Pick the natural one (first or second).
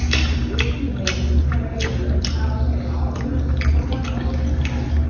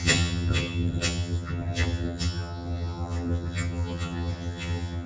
first